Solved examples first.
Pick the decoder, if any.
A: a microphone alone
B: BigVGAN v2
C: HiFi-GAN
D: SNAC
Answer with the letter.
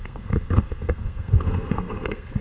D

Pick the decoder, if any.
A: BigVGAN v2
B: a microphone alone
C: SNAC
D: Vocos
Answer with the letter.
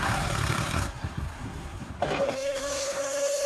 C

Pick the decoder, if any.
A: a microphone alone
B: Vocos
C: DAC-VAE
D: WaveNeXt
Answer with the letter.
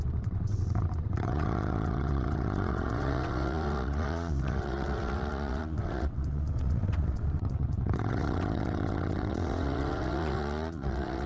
D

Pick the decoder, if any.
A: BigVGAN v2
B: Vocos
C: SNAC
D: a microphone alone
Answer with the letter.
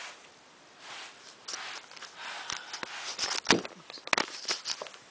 D